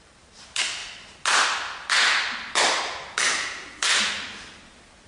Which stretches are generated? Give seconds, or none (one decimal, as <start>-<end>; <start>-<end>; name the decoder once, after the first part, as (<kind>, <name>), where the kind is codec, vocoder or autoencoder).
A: 0.0-0.8 (vocoder, BigVGAN v2); 2.6-3.7